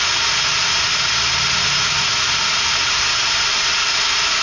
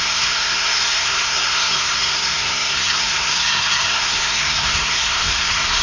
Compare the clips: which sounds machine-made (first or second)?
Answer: second